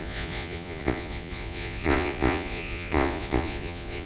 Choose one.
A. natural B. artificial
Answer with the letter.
B